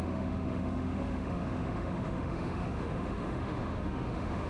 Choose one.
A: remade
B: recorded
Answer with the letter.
A